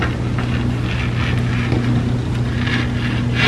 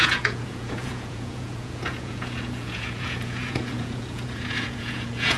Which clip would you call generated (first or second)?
second